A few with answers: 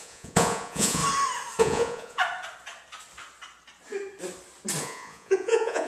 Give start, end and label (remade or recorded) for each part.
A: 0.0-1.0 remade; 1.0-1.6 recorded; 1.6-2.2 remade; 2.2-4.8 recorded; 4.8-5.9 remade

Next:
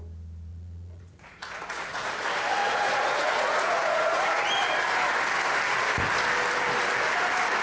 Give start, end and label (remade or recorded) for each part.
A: 0.0-0.5 recorded; 0.5-2.1 remade; 2.1-2.6 recorded; 2.6-4.5 remade; 4.5-7.6 recorded

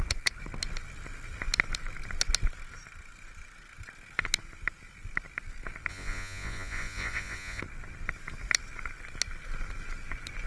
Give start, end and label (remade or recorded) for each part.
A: 0.0-5.9 recorded; 5.9-7.6 remade; 7.6-10.5 recorded

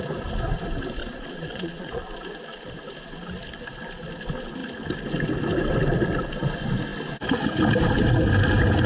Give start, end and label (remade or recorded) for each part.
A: 0.0-1.0 recorded; 1.0-2.0 remade; 2.0-8.9 recorded

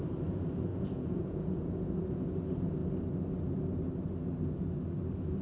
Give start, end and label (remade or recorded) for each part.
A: 0.0-0.7 recorded; 0.7-1.8 remade; 1.8-5.4 recorded

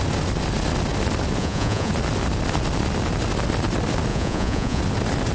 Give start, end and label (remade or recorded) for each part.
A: 0.0-1.4 recorded; 1.4-1.9 remade; 1.9-4.1 recorded; 4.1-4.8 remade; 4.8-5.3 recorded

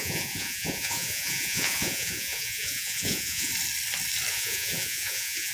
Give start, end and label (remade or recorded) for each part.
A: 0.0-3.5 remade; 3.5-4.3 recorded; 4.3-5.5 remade